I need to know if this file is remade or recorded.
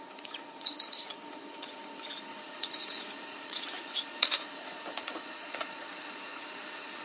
remade